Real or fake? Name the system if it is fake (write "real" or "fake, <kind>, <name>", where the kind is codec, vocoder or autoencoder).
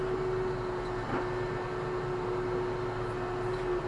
real